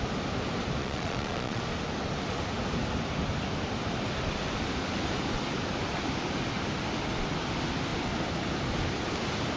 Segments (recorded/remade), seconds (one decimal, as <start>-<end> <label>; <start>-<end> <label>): 0.0-0.8 recorded; 0.8-1.6 remade; 1.6-9.6 recorded